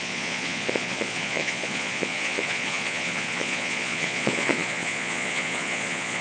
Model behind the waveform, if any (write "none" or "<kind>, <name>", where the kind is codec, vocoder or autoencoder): vocoder, Vocos